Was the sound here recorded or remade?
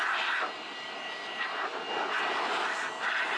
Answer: recorded